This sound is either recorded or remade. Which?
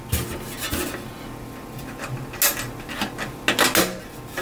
recorded